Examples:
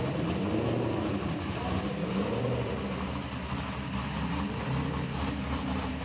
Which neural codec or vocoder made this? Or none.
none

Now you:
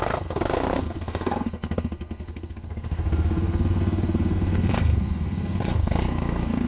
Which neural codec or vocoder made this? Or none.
codec, SNAC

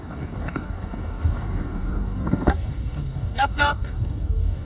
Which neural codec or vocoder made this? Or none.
codec, DAC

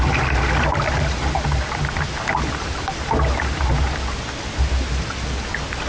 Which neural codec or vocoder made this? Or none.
none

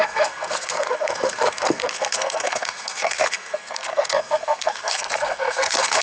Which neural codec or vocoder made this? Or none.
codec, SNAC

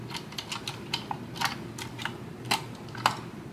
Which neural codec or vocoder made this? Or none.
none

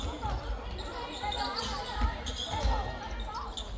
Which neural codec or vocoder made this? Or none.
none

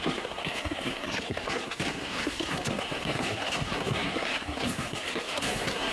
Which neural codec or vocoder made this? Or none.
codec, SNAC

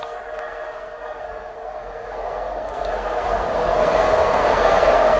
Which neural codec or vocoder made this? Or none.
codec, SNAC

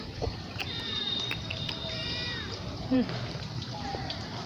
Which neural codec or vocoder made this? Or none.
vocoder, BigVGAN v2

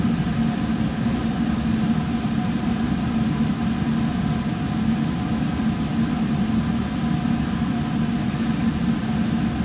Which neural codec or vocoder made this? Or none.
none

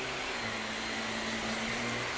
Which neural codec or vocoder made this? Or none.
none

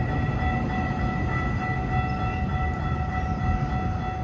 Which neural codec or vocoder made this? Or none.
none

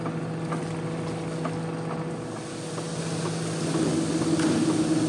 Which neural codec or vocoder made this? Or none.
none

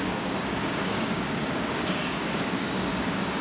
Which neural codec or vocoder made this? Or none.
codec, DAC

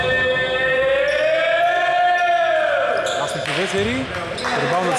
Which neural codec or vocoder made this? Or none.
none